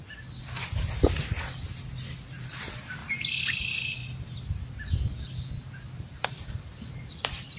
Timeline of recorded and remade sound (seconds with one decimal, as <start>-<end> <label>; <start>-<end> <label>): 0.0-7.6 recorded